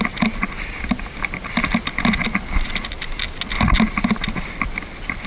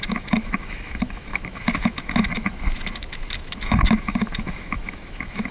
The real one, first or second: first